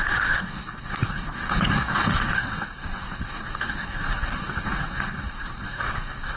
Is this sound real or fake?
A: fake